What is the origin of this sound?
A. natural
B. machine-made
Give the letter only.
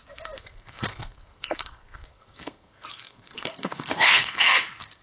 B